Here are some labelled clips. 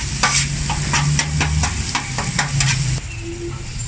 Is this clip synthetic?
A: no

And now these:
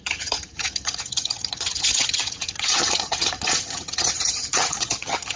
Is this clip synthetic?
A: yes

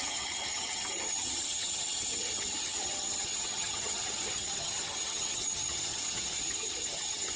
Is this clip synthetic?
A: yes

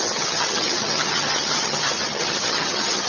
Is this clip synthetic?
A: yes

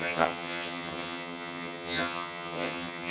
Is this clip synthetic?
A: yes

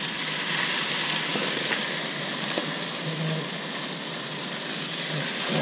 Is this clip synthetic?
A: no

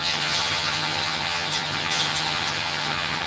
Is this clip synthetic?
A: yes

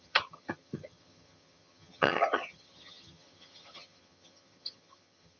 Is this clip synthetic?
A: yes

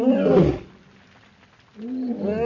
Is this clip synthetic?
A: no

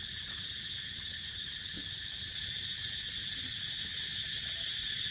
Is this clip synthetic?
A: no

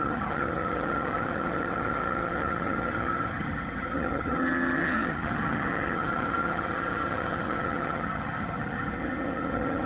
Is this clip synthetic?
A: yes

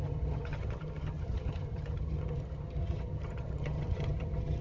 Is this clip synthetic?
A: yes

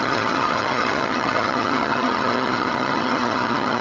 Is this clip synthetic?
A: yes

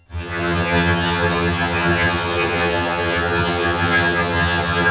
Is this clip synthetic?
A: yes